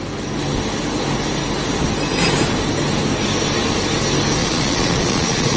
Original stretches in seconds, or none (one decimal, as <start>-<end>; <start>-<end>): 0.0-4.4